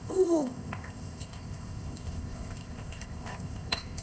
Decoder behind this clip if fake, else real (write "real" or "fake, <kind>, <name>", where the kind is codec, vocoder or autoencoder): fake, codec, ZipCodec